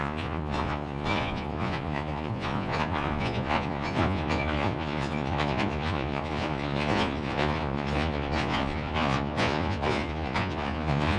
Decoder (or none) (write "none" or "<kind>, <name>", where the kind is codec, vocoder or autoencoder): vocoder, Vocos